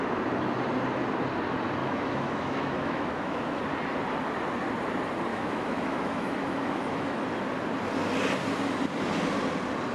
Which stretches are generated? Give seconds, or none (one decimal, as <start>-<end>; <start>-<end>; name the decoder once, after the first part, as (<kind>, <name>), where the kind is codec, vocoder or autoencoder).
1.8-3.6 (autoencoder, DAC-VAE); 5.3-7.2